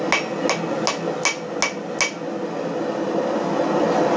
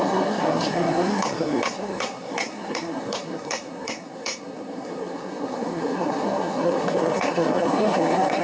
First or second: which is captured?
first